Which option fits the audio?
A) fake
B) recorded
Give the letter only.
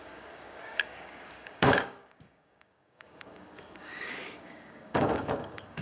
A